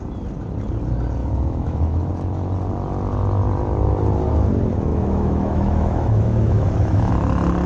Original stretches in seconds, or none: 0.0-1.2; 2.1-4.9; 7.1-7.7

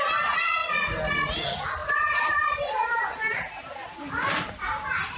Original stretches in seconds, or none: 0.0-1.8

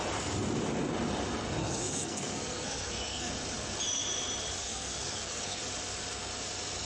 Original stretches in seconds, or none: 0.0-1.6; 3.3-4.6; 5.6-6.8

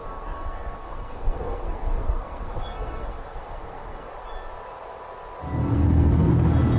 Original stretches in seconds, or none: 4.1-5.6; 6.3-6.8

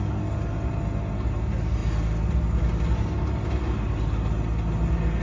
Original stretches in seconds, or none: 0.0-5.2